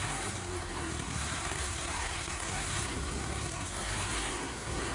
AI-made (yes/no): yes